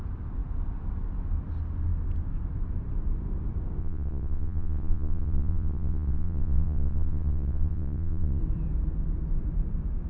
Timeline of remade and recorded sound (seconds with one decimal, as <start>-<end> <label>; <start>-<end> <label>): 0.0-3.8 recorded; 3.8-8.4 remade; 8.4-10.1 recorded